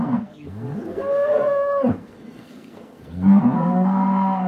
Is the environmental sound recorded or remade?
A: remade